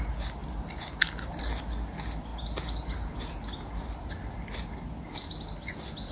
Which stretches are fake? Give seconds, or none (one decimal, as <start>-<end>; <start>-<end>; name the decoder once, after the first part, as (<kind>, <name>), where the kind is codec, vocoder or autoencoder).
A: none